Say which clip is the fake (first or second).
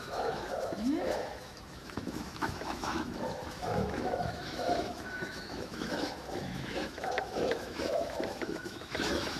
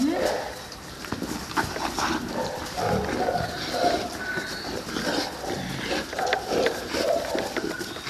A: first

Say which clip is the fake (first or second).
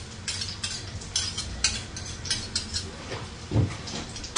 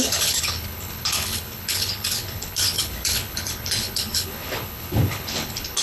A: second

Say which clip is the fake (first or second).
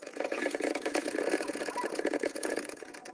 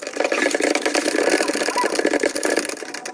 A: first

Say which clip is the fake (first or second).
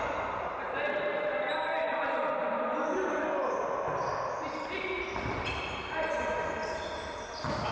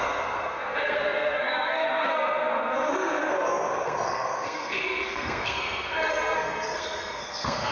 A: second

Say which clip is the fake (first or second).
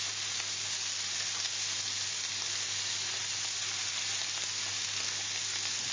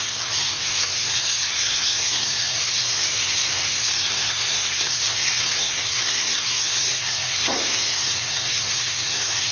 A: second